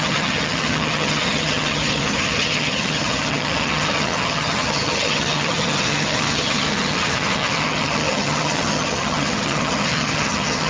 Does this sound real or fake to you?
fake